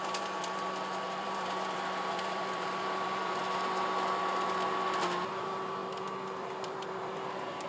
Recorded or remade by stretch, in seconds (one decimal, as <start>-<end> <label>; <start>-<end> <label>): 0.0-3.4 remade; 3.4-5.3 recorded; 5.3-5.8 remade; 5.8-6.4 recorded; 6.4-7.7 remade